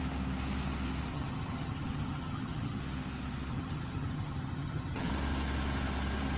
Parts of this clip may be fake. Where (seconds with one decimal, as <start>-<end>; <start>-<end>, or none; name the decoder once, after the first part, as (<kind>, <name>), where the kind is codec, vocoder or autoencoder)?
1.1-2.8 (vocoder, HiFi-GAN); 3.5-5.1